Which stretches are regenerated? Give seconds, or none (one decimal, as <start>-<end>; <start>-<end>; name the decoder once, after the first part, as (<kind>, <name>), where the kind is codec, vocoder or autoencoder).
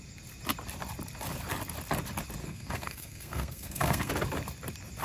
2.4-4.1 (codec, SNAC)